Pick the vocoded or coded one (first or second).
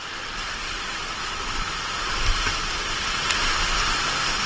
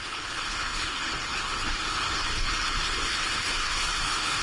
second